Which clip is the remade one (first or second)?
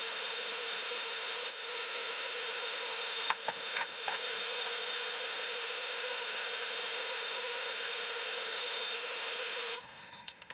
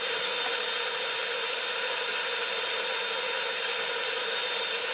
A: first